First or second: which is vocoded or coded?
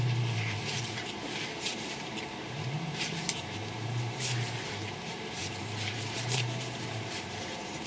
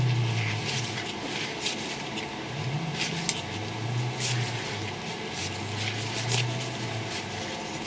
first